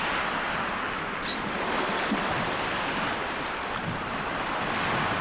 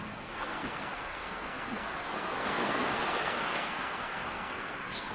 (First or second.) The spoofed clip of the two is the second